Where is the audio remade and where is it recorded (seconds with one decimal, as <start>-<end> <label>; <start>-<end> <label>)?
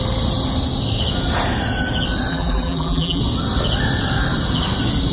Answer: 0.0-2.3 recorded; 2.3-3.2 remade; 3.2-5.1 recorded